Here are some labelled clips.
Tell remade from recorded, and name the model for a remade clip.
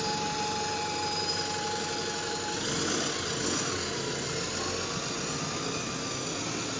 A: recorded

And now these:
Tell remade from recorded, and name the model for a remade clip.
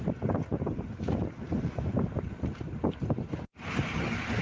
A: recorded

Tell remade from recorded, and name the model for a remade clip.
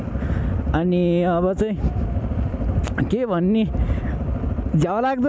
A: recorded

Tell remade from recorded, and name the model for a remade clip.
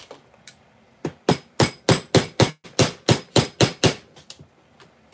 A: recorded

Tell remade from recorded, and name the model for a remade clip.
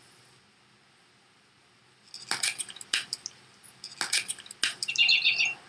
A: recorded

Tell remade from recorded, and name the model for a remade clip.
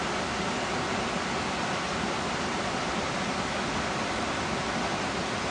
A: recorded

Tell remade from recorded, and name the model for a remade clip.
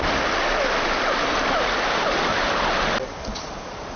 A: recorded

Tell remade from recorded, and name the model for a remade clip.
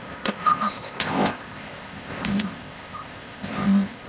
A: remade, codec, ZipCodec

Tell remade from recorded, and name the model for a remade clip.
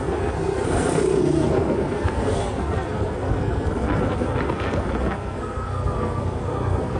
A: remade, codec, SNAC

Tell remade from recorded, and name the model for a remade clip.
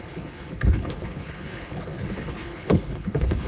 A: remade, codec, HILCodec